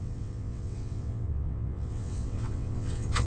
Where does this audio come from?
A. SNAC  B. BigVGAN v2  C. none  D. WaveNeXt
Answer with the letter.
D